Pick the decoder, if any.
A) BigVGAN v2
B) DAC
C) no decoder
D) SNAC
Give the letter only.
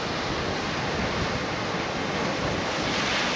C